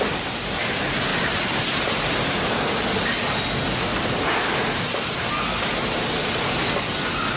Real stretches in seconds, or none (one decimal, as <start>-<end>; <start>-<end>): 0.0-1.1; 2.5-3.9; 5.3-7.4